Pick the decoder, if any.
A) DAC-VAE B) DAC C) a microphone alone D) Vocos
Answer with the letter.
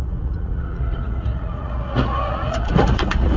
D